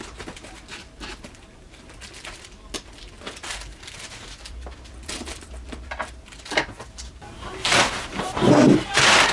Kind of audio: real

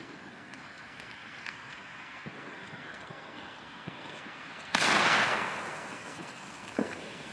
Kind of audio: fake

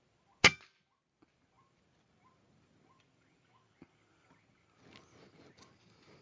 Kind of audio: real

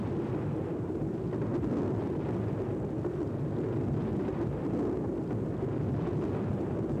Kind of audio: real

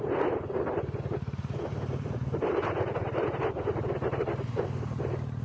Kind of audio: real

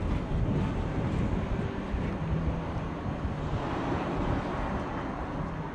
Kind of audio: real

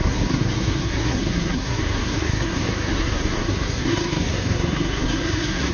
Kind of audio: fake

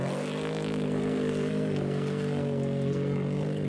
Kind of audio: fake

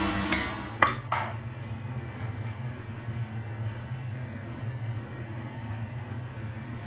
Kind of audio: fake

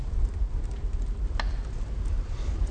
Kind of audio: real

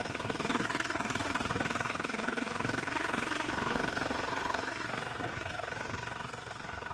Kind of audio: fake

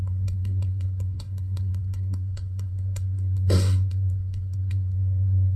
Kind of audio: fake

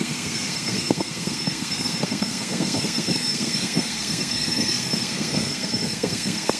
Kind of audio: fake